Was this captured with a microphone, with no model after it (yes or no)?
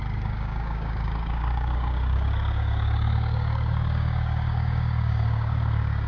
no